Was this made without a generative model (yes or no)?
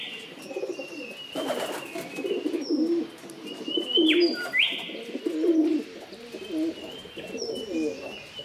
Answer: yes